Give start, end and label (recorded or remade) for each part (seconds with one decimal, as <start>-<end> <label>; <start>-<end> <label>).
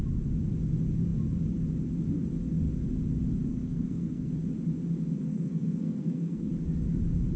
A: 0.0-3.5 recorded; 3.5-4.3 remade; 4.3-5.3 recorded; 5.3-6.5 remade; 6.5-7.4 recorded